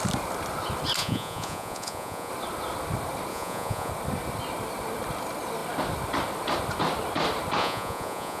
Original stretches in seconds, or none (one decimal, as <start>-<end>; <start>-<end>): 0.0-1.0; 2.3-3.3; 3.9-7.6